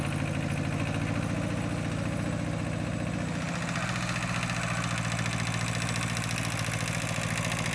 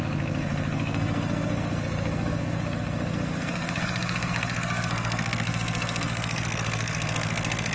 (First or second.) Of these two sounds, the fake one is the second